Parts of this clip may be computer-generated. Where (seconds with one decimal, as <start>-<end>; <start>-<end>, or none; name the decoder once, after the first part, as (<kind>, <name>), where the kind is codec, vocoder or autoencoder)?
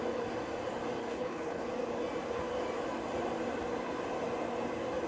1.0-1.6 (codec, HILCodec)